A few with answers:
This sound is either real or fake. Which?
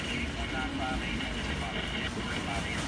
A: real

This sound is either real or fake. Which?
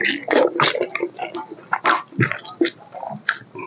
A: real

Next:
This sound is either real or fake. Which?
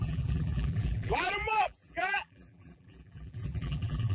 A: fake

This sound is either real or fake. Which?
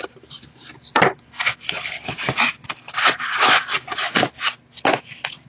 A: real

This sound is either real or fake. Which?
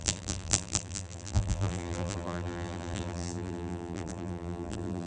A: fake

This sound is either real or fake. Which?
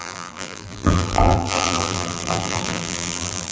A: fake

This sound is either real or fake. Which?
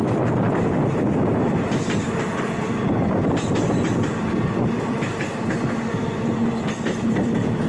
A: fake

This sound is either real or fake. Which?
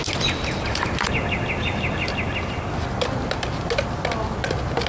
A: real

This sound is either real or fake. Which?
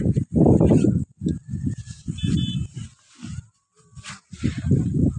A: real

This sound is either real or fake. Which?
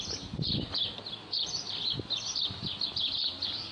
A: fake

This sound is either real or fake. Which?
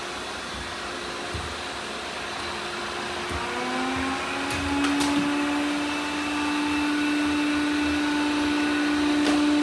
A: real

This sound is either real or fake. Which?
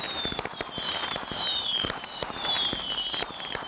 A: fake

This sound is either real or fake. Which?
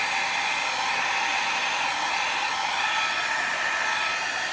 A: real